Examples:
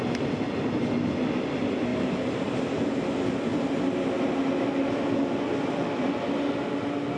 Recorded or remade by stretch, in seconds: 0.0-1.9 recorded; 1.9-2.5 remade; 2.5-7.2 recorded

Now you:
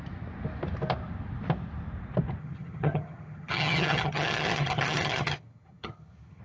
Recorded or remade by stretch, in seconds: 0.0-2.4 recorded; 2.4-6.4 remade